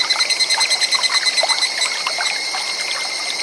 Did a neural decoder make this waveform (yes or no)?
no